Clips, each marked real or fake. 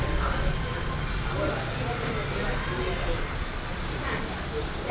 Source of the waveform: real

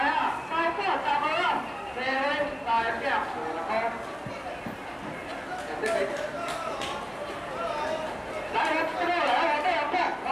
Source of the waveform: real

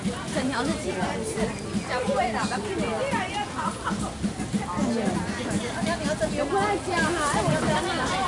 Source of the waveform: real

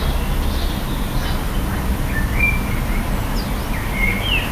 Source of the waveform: real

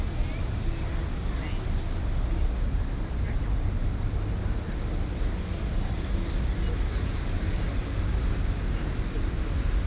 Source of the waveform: real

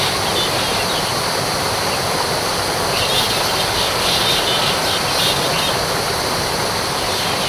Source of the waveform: real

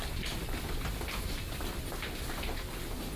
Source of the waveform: real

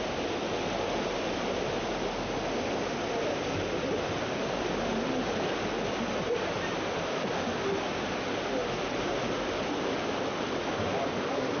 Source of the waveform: real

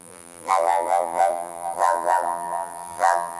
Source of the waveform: fake